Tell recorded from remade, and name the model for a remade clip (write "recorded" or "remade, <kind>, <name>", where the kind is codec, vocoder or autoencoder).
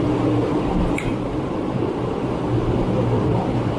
remade, vocoder, BigVGAN v2